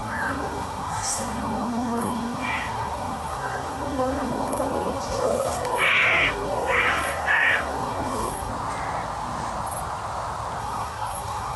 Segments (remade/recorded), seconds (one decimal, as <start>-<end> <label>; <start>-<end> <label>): 0.0-8.5 remade; 8.5-10.6 recorded; 10.6-11.6 remade

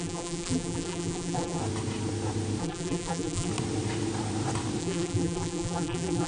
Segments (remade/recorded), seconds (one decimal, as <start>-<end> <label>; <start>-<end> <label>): 0.0-1.6 remade; 1.6-2.6 recorded; 2.6-3.5 remade; 3.5-4.8 recorded; 4.8-6.3 remade

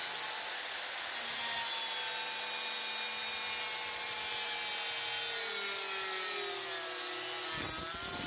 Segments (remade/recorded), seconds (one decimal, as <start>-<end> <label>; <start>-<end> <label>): 0.0-8.3 recorded

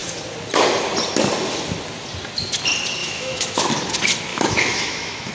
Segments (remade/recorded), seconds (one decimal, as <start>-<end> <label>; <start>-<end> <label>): 0.0-3.0 recorded; 3.0-3.7 remade; 3.7-4.3 recorded; 4.3-5.3 remade

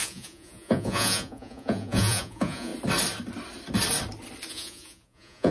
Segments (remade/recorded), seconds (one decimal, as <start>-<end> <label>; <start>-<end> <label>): 0.0-2.7 remade; 2.7-4.5 recorded; 4.5-5.5 remade

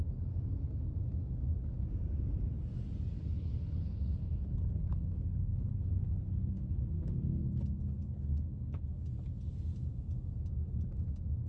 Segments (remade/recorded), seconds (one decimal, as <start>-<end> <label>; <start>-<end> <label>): 0.0-3.3 recorded; 3.3-7.4 remade; 7.4-8.0 recorded; 8.0-8.8 remade; 8.8-11.5 recorded

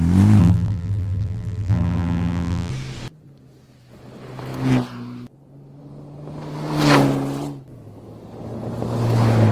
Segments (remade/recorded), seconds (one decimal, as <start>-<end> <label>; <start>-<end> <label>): 0.0-0.4 recorded; 0.4-2.7 remade; 2.7-9.5 recorded

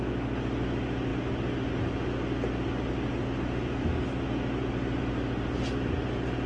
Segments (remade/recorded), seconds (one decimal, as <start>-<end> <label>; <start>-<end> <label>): 0.0-6.5 recorded